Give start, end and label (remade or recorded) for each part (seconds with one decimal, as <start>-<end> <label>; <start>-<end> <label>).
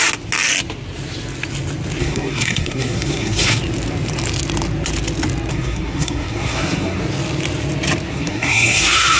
0.0-2.0 recorded; 2.0-3.6 remade; 3.6-5.5 recorded; 5.5-7.0 remade; 7.0-8.1 recorded; 8.1-9.2 remade